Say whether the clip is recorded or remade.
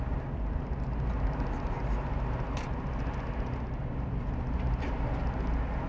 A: recorded